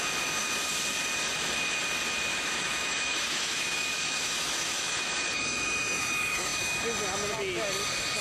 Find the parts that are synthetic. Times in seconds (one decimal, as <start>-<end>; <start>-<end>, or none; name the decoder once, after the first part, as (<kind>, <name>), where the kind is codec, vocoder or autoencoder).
2.3-5.1 (autoencoder, DAC-VAE)

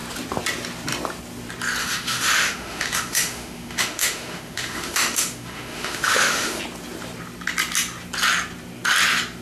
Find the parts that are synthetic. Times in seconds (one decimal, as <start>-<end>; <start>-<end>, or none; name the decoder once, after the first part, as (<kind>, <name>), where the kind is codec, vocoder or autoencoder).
1.8-6.6 (autoencoder, DAC-VAE)